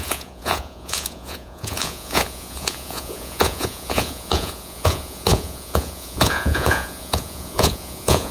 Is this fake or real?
fake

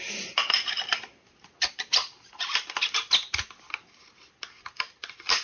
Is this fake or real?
real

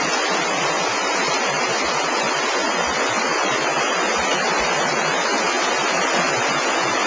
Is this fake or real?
real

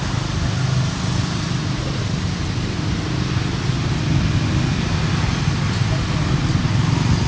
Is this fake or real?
real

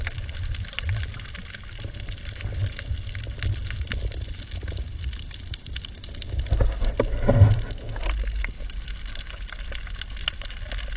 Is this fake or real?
real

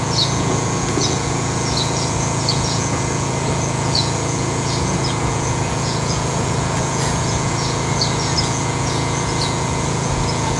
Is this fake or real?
fake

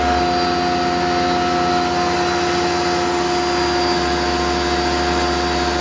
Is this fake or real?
real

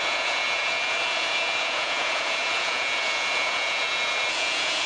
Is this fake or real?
fake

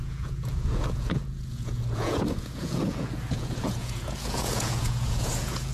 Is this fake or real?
fake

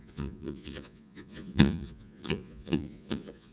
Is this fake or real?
fake